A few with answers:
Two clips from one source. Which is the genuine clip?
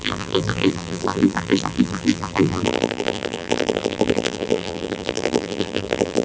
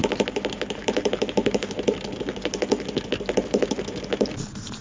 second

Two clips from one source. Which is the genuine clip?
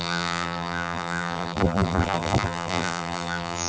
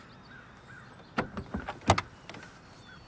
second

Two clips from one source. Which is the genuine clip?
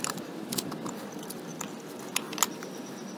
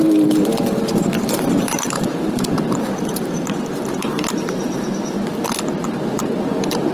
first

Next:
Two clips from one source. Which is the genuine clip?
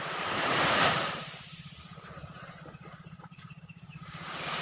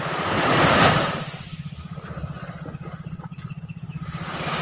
second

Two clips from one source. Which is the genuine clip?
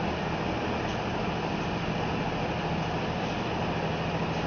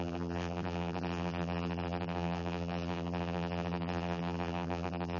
first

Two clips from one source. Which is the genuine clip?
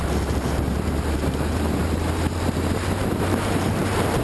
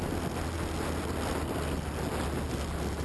second